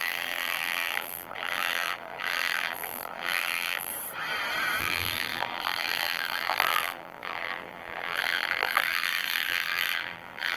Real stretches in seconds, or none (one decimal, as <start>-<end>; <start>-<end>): 3.9-4.8